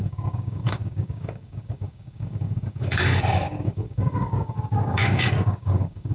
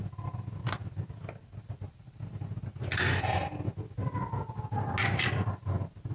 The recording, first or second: second